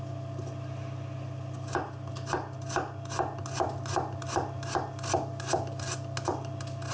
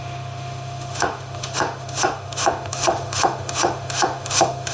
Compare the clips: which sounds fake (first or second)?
second